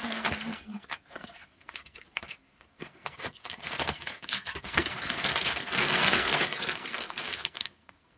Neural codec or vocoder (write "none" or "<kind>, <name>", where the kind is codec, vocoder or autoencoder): codec, SNAC